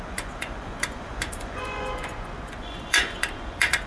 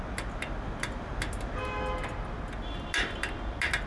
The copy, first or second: first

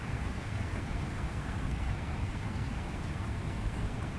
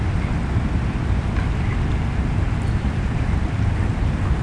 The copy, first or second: first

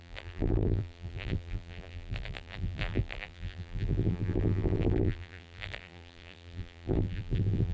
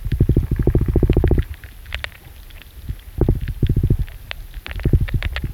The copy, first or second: first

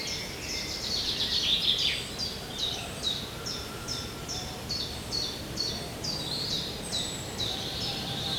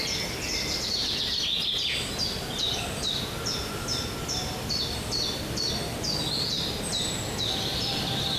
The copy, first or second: first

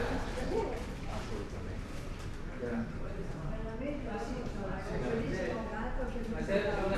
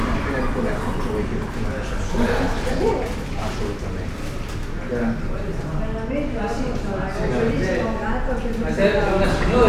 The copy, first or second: first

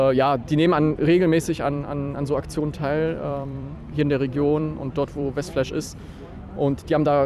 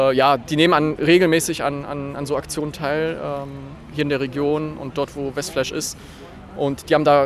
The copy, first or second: first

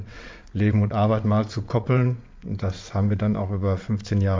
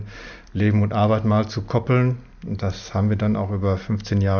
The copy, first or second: first